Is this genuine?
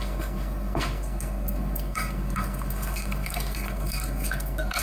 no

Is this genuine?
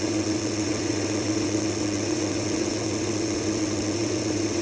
no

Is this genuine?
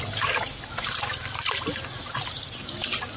yes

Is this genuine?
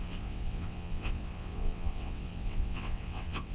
no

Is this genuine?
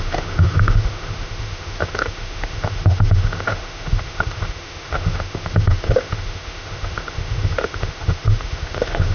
no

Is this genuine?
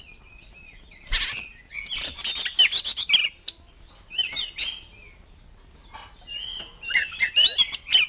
yes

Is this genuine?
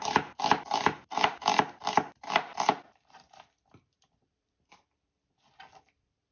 no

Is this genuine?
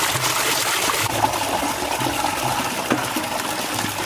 yes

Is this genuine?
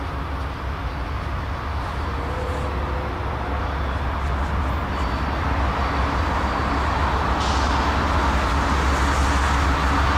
yes